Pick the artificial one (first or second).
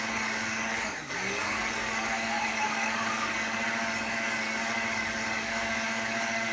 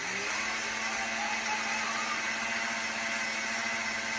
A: first